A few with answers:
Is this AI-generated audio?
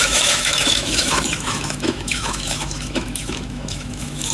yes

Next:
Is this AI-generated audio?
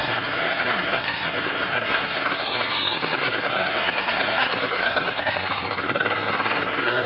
yes